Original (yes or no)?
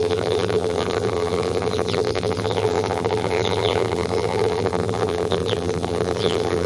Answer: no